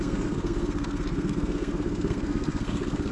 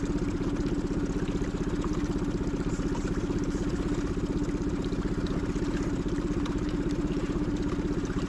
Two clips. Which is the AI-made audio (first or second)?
first